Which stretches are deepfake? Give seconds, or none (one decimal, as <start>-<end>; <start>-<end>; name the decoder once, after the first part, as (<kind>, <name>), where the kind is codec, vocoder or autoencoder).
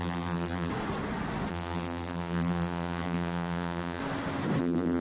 0.0-0.7 (vocoder, BigVGAN v2); 1.5-4.0; 4.6-5.0